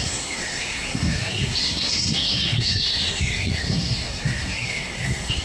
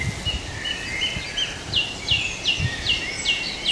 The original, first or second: second